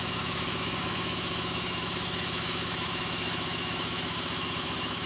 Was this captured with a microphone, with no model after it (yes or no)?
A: no